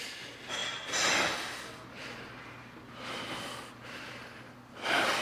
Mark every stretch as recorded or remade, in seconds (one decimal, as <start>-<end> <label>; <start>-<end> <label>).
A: 0.0-5.2 recorded